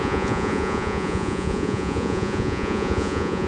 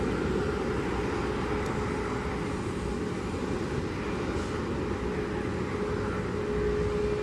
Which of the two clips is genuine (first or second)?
second